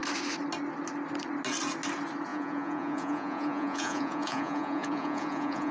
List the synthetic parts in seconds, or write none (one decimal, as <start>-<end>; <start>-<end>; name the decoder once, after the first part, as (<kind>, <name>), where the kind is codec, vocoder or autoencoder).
2.3-5.7 (vocoder, Vocos)